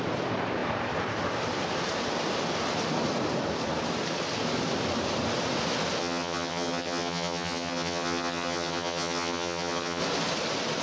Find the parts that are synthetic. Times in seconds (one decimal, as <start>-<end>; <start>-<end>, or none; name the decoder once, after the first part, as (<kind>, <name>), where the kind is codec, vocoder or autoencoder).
6.0-10.0 (vocoder, HiFi-GAN)